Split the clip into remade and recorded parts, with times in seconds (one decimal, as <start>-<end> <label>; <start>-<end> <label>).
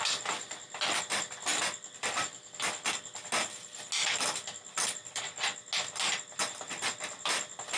0.0-7.8 recorded